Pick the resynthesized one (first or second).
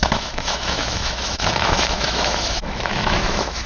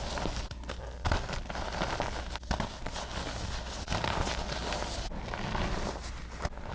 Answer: first